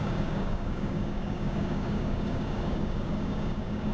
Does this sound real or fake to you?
fake